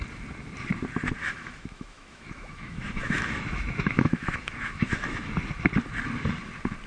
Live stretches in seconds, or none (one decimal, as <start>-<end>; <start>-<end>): 0.0-1.2; 5.3-6.9